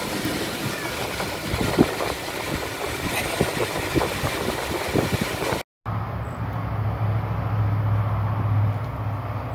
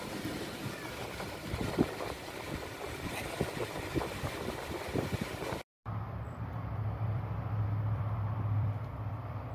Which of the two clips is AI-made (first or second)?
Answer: second